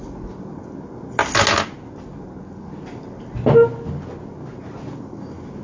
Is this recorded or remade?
recorded